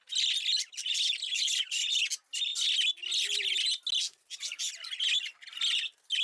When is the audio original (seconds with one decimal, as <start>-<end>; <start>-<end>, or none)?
0.0-6.2